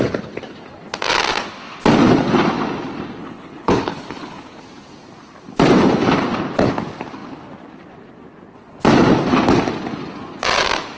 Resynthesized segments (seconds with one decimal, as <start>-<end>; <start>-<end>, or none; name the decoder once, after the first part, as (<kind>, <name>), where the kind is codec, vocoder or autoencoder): 3.2-4.6 (codec, HILCodec)